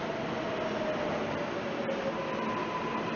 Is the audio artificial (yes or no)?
no